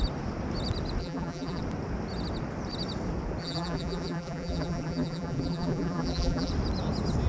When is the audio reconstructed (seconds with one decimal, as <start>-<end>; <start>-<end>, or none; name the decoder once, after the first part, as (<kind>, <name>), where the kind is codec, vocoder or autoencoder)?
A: 1.0-1.6 (vocoder, BigVGAN v2); 3.4-6.5